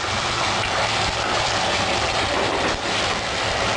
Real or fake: real